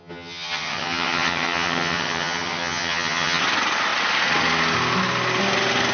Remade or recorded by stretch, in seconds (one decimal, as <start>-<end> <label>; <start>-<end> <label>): 0.0-3.4 remade; 3.4-5.9 recorded